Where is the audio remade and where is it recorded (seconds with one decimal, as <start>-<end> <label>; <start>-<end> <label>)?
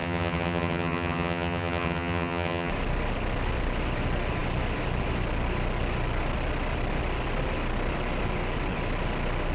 0.0-2.7 remade; 2.7-9.5 recorded